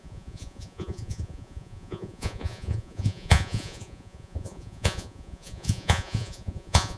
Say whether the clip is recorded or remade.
remade